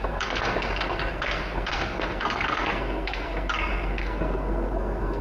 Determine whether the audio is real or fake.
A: fake